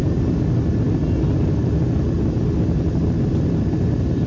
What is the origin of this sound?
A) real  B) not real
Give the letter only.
A